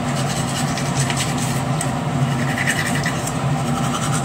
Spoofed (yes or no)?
no